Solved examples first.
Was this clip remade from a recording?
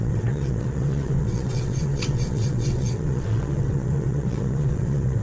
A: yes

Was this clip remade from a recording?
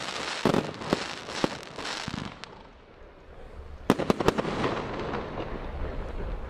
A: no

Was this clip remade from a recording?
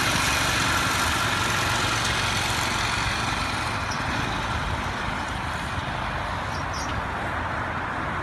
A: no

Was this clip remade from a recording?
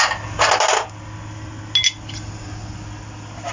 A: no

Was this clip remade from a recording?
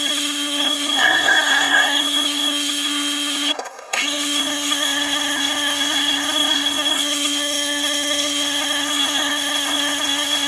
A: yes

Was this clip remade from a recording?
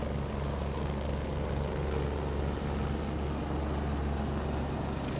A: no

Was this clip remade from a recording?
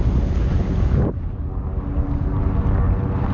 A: no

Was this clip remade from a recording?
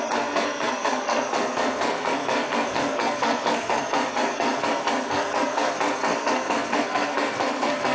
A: yes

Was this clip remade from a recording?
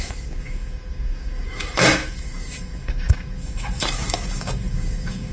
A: yes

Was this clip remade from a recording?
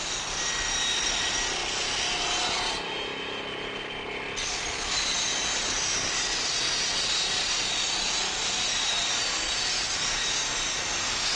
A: no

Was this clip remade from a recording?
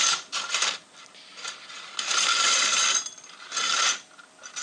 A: no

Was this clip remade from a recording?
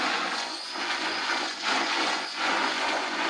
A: yes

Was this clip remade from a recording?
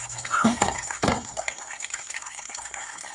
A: yes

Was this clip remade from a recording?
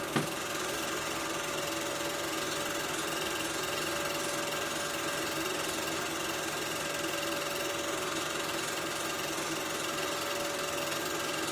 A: no